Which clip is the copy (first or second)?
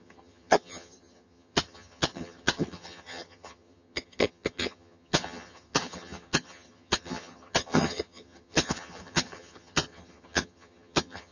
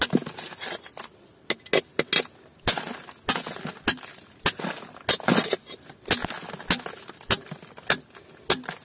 first